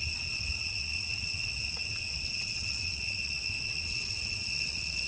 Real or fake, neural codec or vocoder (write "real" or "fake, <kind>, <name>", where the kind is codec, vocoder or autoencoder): fake, vocoder, WaveNeXt